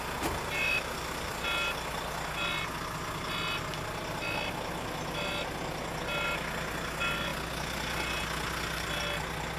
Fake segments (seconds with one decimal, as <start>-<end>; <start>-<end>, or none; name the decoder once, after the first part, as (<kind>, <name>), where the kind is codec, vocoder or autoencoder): none